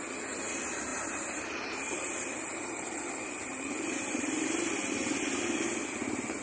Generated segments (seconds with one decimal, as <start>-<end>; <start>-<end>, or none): 0.9-4.7